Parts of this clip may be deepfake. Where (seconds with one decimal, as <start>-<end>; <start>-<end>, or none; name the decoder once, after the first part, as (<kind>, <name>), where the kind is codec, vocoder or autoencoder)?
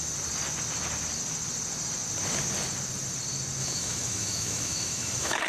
3.6-5.5 (autoencoder, DAC-VAE)